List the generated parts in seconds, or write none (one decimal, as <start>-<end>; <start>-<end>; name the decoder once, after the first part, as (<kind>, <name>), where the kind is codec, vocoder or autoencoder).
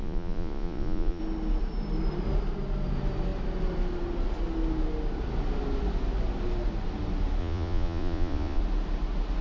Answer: 0.0-1.2 (vocoder, Vocos); 7.4-8.6